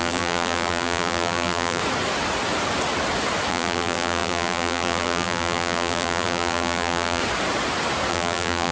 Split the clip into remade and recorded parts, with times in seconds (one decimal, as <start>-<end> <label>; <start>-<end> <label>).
0.0-1.8 remade; 1.8-3.5 recorded; 3.5-7.2 remade; 7.2-8.1 recorded; 8.1-8.7 remade